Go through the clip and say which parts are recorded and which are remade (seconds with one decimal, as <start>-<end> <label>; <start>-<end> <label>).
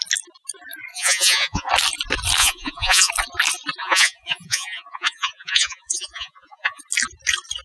0.0-0.9 recorded; 0.9-1.7 remade; 1.7-2.4 recorded; 2.4-3.1 remade; 3.1-3.8 recorded; 3.8-6.8 remade; 6.8-7.6 recorded